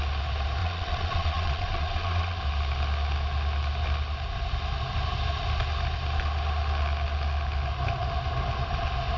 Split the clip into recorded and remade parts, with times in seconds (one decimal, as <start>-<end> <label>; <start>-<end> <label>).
0.0-0.6 recorded; 0.6-2.4 remade; 2.4-9.2 recorded